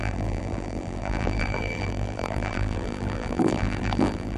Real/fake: fake